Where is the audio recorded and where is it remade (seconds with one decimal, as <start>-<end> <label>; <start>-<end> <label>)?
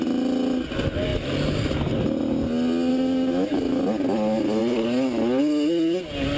0.0-2.9 recorded; 2.9-3.8 remade; 3.8-6.4 recorded